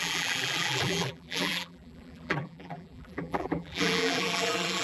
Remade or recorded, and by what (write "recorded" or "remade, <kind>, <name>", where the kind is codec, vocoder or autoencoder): remade, vocoder, BigVGAN v2